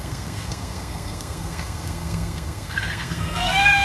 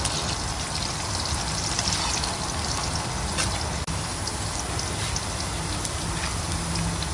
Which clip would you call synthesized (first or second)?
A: first